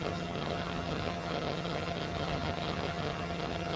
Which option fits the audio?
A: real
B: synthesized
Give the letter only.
B